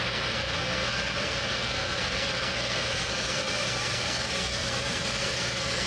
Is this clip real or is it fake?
fake